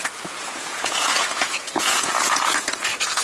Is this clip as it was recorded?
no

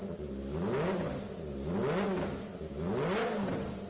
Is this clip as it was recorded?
yes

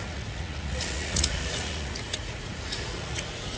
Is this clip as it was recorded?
no